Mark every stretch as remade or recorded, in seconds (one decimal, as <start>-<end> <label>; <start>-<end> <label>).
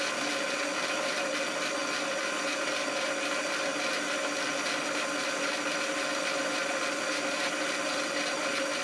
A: 0.0-8.8 recorded